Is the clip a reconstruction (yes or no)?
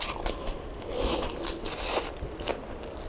yes